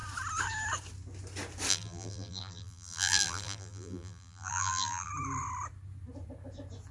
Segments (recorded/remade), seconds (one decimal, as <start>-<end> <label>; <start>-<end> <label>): 0.0-1.7 recorded; 1.7-5.1 remade; 5.1-6.9 recorded